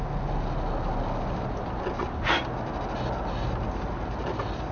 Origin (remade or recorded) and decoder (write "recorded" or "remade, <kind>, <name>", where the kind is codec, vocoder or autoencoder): recorded